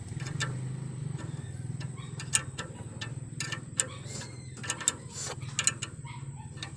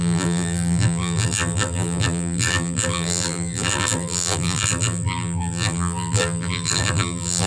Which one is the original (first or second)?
first